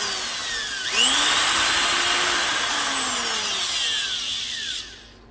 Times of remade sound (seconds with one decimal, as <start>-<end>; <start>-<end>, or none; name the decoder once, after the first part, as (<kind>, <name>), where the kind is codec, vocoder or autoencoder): none